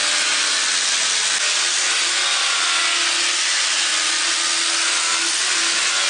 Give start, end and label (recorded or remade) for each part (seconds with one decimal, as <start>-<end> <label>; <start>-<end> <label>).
0.0-6.1 recorded